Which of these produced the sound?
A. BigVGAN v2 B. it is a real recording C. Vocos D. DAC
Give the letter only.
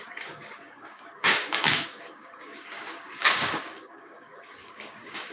D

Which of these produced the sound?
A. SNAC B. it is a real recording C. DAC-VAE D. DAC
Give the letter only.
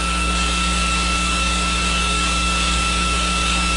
D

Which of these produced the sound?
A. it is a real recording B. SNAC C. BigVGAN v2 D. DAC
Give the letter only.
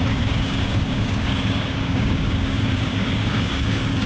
D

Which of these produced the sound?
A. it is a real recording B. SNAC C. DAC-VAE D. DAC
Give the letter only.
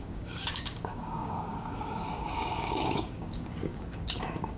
D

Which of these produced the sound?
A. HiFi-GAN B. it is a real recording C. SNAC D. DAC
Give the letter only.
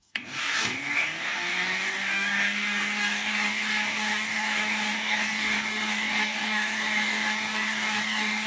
D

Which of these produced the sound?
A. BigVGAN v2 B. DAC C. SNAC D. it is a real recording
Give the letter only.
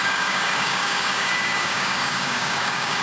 B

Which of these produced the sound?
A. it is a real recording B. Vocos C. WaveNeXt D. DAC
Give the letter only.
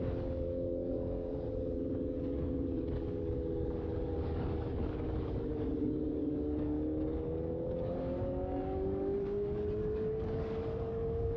D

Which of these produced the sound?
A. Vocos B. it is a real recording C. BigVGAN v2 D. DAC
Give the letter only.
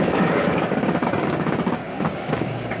D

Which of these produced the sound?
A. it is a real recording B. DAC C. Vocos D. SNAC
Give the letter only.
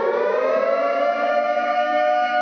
B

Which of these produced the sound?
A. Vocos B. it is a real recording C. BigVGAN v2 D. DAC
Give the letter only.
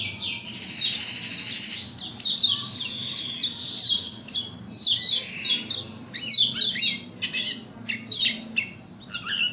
B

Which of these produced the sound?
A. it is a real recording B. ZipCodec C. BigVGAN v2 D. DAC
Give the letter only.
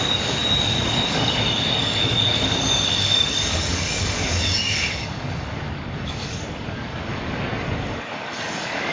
D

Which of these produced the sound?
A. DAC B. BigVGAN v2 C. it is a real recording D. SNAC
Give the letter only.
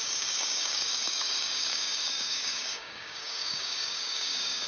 A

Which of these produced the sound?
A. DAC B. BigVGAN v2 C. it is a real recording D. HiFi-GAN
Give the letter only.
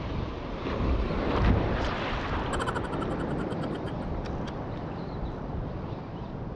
C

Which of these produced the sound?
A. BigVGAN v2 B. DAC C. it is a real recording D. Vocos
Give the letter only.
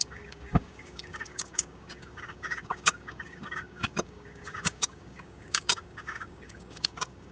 B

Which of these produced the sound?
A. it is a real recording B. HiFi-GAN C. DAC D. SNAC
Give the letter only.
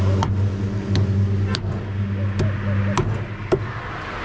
A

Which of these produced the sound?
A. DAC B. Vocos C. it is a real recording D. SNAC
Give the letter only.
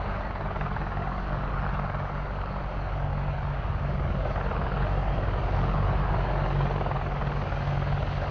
A